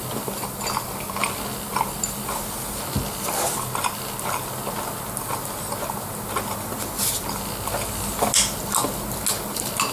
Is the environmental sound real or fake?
real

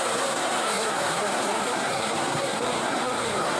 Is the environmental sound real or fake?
fake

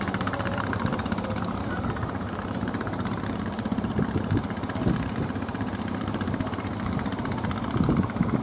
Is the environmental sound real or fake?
fake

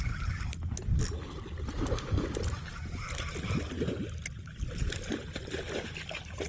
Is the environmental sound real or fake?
real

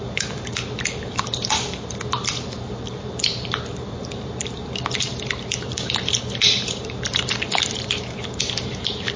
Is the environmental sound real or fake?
fake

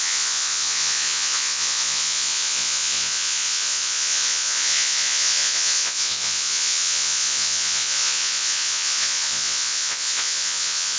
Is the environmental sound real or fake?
fake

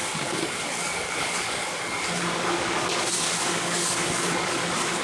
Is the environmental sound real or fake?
fake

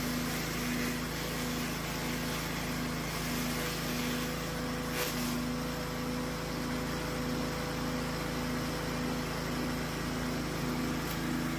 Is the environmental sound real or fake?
real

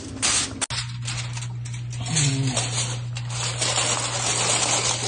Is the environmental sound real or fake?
real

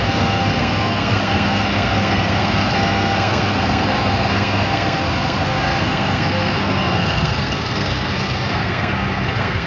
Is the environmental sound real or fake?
fake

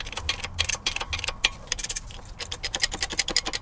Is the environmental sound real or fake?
real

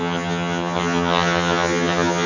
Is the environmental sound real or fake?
fake